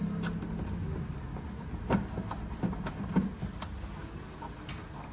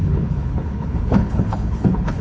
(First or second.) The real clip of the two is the first